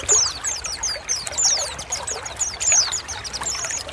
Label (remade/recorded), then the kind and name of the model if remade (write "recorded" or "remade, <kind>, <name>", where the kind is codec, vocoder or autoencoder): recorded